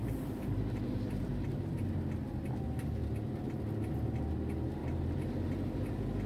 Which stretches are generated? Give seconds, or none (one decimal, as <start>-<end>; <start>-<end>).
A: 0.0-1.9; 4.8-5.3